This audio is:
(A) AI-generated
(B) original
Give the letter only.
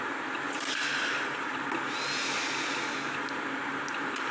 B